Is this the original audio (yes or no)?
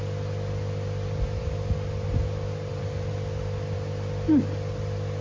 yes